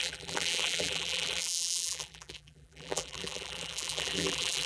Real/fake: fake